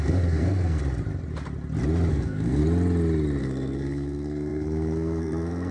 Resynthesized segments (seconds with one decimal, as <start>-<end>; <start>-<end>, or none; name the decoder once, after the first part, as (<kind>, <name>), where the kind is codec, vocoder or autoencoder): 0.0-0.8 (codec, SNAC); 2.1-2.6; 3.4-5.7